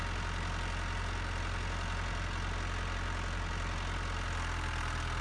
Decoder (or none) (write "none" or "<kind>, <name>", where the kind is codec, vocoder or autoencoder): none